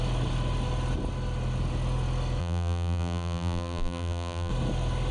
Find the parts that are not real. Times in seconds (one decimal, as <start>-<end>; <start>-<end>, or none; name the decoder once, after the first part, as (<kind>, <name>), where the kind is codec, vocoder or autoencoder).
2.4-4.5 (vocoder, BigVGAN v2)

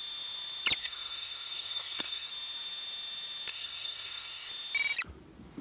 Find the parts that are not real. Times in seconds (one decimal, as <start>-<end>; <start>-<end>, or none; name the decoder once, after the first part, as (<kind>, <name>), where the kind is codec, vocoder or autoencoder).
0.8-2.3 (codec, SNAC); 3.5-4.5

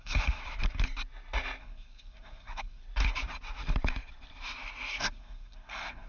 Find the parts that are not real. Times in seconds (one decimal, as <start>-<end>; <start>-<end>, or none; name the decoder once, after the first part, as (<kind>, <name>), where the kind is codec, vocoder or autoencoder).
0.0-0.4 (codec, SNAC); 1.6-2.8; 5.0-6.1